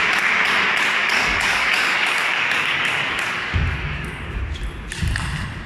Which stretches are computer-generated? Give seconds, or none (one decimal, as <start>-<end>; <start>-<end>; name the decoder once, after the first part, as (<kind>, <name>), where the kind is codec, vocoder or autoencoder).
1.0-4.4 (codec, DAC)